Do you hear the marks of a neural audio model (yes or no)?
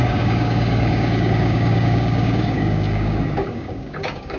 yes